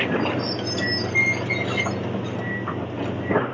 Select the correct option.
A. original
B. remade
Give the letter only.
A